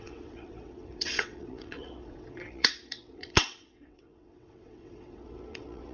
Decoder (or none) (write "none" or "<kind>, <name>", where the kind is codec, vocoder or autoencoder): vocoder, WaveNeXt